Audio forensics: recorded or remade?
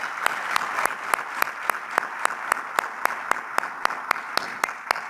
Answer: recorded